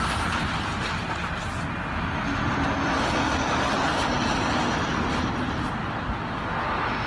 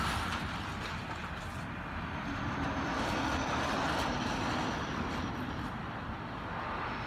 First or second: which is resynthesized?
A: second